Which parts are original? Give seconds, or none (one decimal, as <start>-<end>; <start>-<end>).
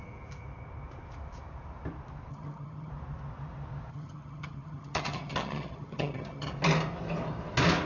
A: 0.0-2.3; 2.9-3.9; 6.5-7.9